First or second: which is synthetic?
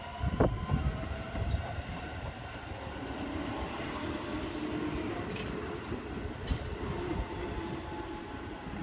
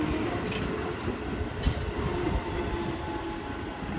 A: first